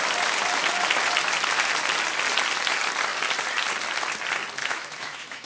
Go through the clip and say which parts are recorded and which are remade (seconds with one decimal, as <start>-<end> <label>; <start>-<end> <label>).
0.0-4.6 recorded; 4.6-5.5 remade